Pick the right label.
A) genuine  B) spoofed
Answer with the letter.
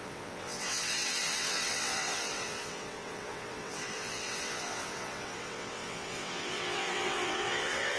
B